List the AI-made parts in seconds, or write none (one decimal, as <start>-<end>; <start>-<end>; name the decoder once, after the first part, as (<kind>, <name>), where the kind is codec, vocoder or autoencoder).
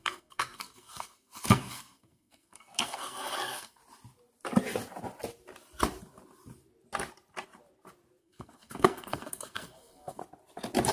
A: 0.0-3.8 (codec, SNAC); 8.2-10.2